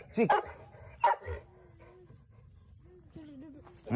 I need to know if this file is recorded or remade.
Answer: recorded